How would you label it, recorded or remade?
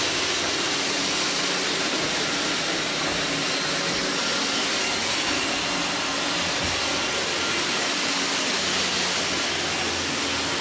recorded